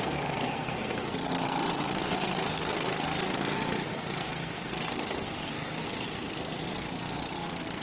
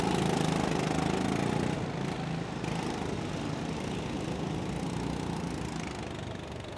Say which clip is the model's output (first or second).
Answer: first